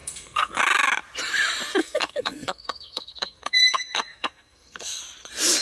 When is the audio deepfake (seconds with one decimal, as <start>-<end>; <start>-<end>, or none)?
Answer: 0.0-0.6; 1.8-5.0